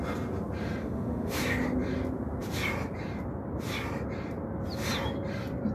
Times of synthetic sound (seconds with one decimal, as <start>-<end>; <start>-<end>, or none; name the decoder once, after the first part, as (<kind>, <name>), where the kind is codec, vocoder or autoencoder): 0.8-1.3 (autoencoder, DAC-VAE)

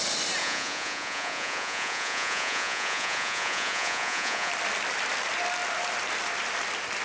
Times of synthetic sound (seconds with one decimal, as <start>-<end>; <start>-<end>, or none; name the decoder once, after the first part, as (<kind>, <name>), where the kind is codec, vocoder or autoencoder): 0.4-4.5 (vocoder, Vocos)